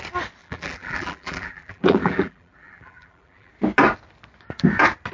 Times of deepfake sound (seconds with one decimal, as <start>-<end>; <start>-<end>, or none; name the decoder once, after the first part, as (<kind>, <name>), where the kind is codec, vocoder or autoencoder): 0.4-3.5 (vocoder, BigVGAN v2)